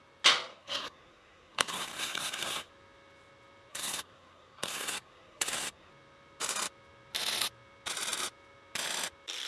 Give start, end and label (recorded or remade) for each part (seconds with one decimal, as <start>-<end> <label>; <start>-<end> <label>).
0.0-0.5 recorded; 0.5-2.7 remade; 2.7-3.7 recorded; 3.7-5.9 remade; 5.9-9.5 recorded